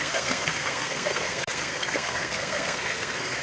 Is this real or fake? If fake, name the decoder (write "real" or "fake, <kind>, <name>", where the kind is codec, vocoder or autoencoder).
fake, codec, SNAC